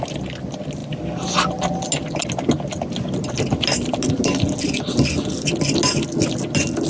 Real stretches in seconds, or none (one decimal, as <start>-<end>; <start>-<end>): 0.0-6.9